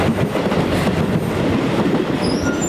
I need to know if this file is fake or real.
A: real